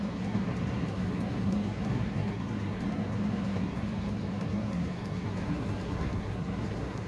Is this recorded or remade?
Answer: remade